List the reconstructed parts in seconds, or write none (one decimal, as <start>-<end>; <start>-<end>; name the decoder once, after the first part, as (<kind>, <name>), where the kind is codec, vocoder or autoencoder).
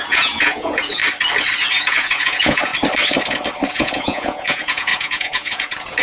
0.0-1.0 (vocoder, Vocos); 1.7-2.7; 3.7-6.0